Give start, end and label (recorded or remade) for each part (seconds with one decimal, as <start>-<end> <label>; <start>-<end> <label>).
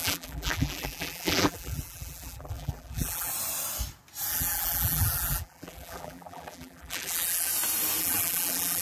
0.0-3.3 remade; 3.3-4.3 recorded; 4.3-7.5 remade; 7.5-8.0 recorded; 8.0-8.8 remade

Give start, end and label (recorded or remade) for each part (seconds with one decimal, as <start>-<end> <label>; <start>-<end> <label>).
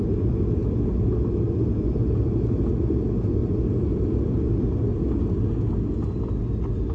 0.0-6.9 recorded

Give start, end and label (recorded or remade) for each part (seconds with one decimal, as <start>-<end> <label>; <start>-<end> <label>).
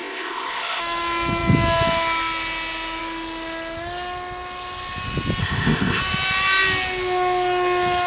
0.0-0.8 remade; 0.8-5.4 recorded; 5.4-6.0 remade; 6.0-8.1 recorded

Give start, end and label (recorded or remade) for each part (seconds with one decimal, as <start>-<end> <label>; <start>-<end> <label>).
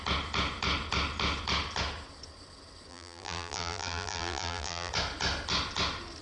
0.0-2.9 recorded; 2.9-4.9 remade; 4.9-6.2 recorded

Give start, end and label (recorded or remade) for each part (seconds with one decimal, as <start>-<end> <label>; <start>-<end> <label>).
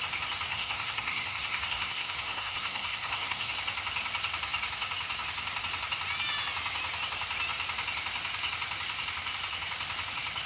0.0-0.5 recorded; 0.5-3.5 remade; 3.5-10.5 recorded